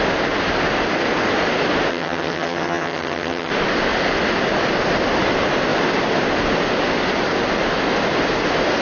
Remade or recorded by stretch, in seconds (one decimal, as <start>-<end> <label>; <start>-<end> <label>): 0.0-1.9 recorded; 1.9-3.5 remade; 3.5-8.8 recorded